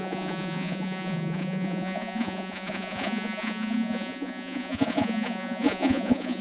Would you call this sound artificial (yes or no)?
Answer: yes